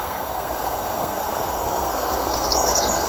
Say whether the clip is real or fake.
fake